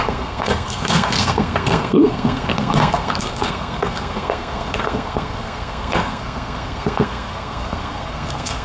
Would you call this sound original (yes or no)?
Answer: no